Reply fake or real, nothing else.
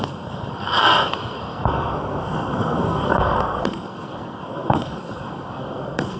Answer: fake